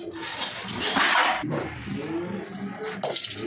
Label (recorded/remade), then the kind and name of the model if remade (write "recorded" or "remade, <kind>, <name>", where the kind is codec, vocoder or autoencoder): recorded